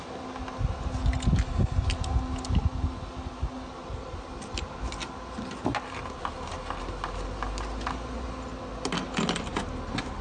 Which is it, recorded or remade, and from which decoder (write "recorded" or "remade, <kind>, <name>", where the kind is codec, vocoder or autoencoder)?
recorded